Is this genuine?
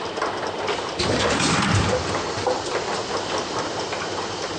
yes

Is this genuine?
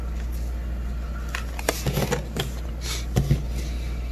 yes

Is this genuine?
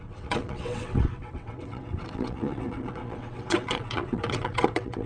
no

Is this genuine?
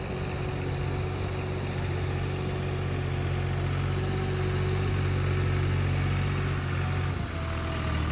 yes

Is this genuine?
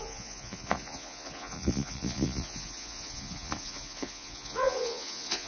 no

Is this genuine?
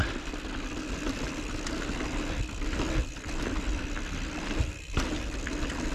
yes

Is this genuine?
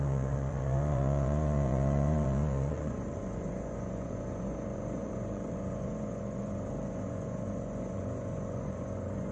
no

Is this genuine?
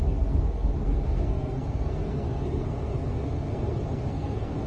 no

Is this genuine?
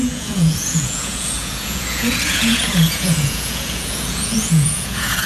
no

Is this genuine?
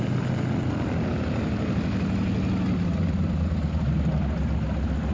yes